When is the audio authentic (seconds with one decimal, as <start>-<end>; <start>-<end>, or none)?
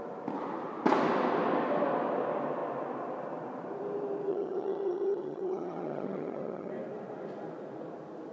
0.0-4.3; 6.7-8.3